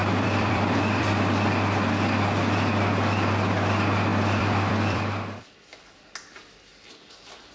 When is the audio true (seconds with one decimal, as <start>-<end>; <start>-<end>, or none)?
1.5-4.1; 5.8-7.5